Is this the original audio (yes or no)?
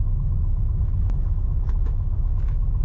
no